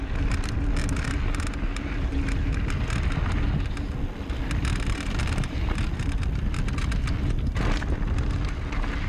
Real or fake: real